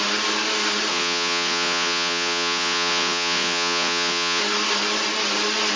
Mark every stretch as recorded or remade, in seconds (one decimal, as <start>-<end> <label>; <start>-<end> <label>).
0.0-0.9 recorded; 0.9-4.4 remade; 4.4-5.8 recorded